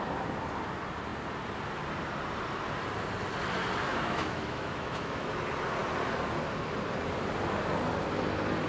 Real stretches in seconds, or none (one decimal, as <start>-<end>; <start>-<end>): 0.0-3.9; 5.3-8.7